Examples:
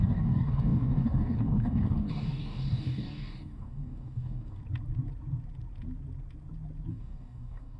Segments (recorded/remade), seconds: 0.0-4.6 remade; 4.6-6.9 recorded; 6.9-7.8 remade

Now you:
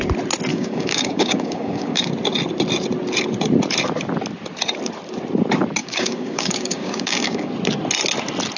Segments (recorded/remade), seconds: 0.0-0.5 recorded; 0.5-2.1 remade; 2.1-5.8 recorded; 5.8-7.5 remade; 7.5-8.6 recorded

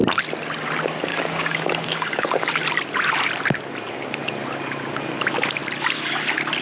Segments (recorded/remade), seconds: 0.0-1.1 recorded; 1.1-2.5 remade; 2.5-6.6 recorded

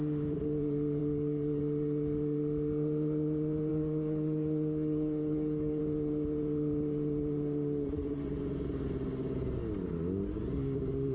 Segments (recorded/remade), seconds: 0.0-1.0 recorded; 1.0-1.6 remade; 1.6-3.7 recorded; 3.7-5.8 remade; 5.8-11.1 recorded

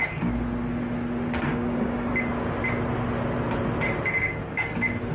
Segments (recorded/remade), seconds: 0.0-1.5 recorded; 1.5-2.1 remade; 2.1-5.1 recorded

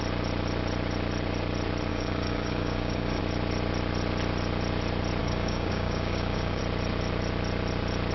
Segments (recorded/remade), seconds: 0.0-1.9 recorded; 1.9-3.2 remade; 3.2-5.2 recorded; 5.2-6.6 remade; 6.6-8.1 recorded

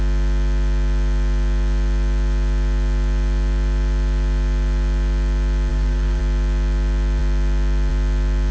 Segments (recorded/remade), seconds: 0.0-5.7 recorded; 5.7-6.2 remade; 6.2-8.5 recorded